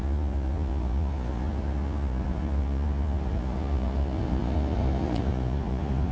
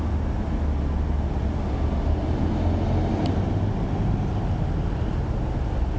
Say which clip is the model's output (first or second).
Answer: first